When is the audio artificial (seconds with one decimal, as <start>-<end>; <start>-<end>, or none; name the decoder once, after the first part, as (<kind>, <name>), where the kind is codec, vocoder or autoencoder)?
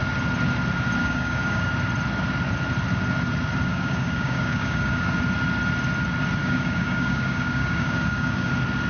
1.0-1.7 (codec, DAC); 3.7-5.1; 6.4-8.5